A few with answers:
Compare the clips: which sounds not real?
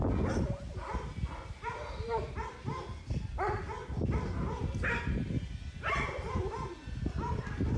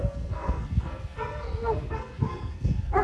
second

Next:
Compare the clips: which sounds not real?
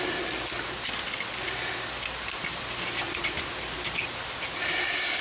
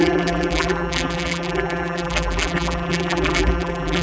second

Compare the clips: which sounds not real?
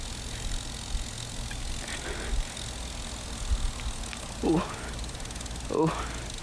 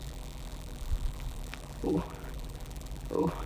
second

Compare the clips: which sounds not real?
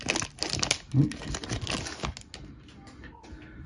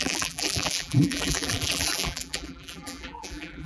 second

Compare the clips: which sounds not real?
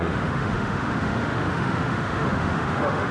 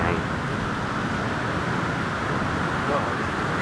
first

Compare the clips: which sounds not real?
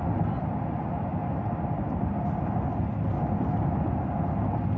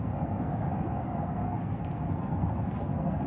second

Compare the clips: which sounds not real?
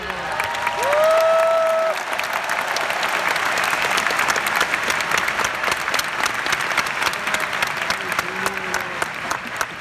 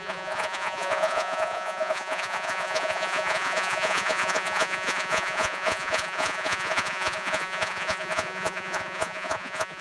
second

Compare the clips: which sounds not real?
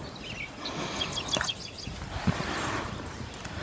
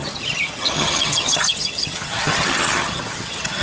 second